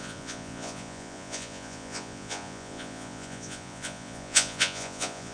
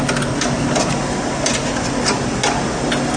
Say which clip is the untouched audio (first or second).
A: second